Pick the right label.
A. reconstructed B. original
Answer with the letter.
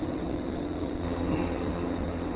A